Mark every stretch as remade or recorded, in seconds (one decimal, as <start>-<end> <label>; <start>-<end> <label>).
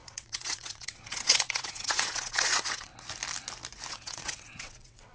0.0-2.9 remade; 2.9-3.9 recorded; 3.9-5.1 remade